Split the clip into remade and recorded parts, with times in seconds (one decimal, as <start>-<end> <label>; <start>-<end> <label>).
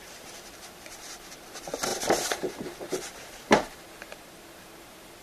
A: 0.0-5.2 remade